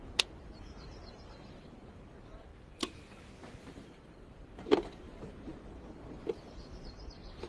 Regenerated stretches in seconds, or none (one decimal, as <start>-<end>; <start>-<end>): 0.0-2.5; 3.6-7.5